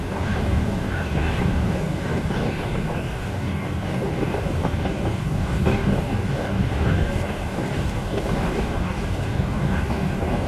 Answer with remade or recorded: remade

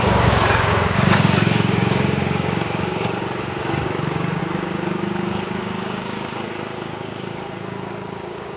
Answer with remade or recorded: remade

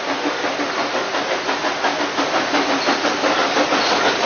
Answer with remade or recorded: recorded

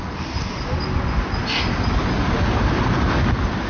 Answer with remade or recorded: recorded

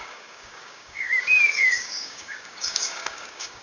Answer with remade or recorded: remade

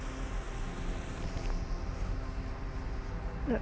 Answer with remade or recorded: recorded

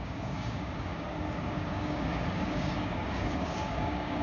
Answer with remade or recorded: remade